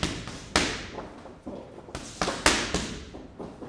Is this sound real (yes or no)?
yes